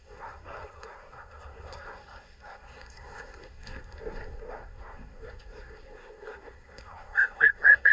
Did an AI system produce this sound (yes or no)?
yes